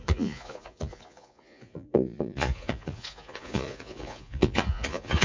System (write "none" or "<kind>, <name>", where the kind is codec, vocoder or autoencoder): vocoder, Vocos